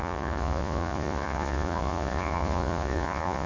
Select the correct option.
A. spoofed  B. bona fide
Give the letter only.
A